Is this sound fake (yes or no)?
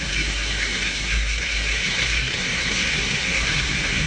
yes